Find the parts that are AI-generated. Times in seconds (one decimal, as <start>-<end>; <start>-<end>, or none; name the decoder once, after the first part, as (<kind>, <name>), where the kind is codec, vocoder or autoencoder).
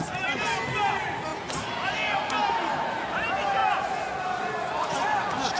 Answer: none